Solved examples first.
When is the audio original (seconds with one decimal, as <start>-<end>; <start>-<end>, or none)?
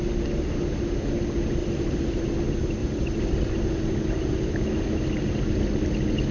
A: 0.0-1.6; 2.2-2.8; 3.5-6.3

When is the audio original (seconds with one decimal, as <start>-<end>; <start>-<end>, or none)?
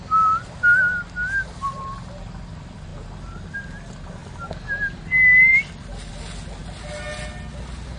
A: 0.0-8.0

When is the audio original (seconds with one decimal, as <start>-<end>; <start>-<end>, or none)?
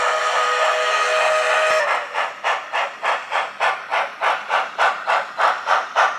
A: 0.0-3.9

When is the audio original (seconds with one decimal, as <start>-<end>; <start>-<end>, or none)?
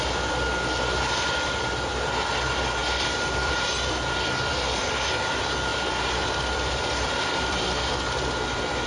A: 0.0-2.8; 3.5-5.7; 7.9-8.9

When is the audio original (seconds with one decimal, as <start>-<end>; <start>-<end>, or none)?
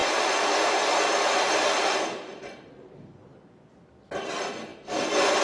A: 3.3-4.3; 4.7-5.4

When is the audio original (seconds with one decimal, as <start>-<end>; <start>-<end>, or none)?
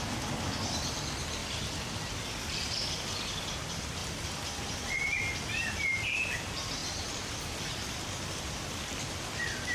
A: 5.3-5.9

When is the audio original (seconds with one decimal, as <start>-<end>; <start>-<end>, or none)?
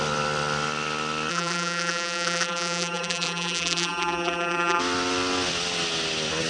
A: 0.0-1.3; 4.8-6.5